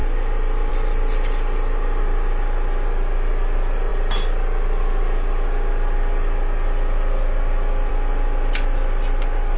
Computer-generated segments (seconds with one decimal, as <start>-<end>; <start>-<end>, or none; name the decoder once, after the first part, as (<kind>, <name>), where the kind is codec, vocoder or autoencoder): none